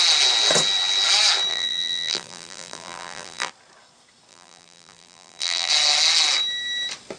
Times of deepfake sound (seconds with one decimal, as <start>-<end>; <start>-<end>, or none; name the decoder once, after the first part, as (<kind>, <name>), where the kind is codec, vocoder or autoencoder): 1.5-3.5 (vocoder, BigVGAN v2); 4.3-5.7